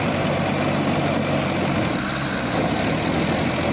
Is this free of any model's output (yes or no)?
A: yes